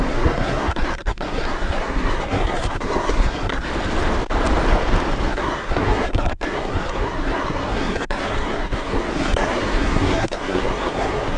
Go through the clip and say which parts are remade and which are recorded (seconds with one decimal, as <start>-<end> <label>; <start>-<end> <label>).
0.0-3.7 remade; 3.7-5.3 recorded; 5.3-11.4 remade